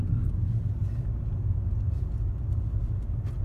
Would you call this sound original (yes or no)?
yes